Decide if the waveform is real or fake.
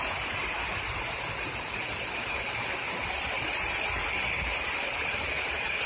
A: real